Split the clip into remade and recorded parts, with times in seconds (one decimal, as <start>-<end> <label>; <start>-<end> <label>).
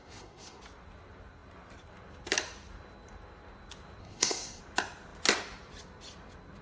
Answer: 0.0-0.6 remade; 0.6-4.0 recorded; 4.0-4.6 remade; 4.6-6.6 recorded